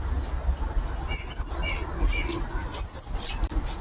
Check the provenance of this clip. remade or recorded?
recorded